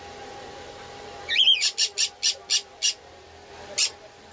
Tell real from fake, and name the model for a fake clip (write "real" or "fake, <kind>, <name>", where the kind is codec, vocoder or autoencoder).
real